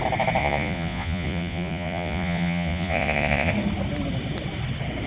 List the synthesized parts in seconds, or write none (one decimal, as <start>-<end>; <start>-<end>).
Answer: 0.4-3.5